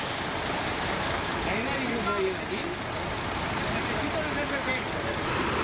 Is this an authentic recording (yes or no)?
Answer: yes